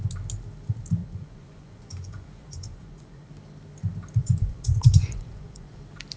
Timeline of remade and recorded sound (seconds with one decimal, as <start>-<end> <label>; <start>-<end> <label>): 0.0-1.0 recorded; 1.0-3.3 remade; 3.3-4.2 recorded; 4.2-5.8 remade; 5.8-6.2 recorded